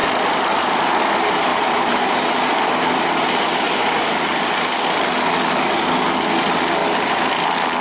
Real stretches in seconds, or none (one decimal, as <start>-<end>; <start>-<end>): 0.0-1.5; 2.1-7.8